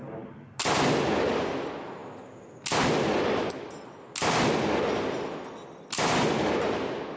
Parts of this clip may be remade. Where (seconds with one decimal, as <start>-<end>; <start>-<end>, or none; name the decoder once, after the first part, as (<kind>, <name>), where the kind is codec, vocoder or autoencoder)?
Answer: none